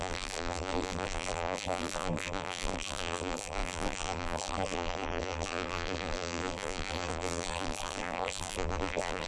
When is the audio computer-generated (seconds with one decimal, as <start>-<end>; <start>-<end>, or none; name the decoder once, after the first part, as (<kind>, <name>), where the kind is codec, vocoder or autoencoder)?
0.0-9.3 (vocoder, BigVGAN v2)